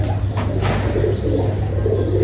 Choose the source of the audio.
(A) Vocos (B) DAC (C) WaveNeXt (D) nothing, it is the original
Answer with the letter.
D